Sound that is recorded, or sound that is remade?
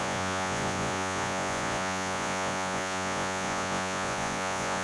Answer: remade